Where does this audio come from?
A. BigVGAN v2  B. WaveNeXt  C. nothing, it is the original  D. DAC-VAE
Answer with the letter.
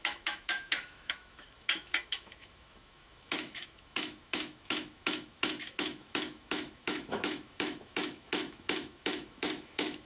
D